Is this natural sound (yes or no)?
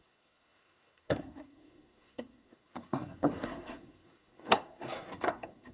no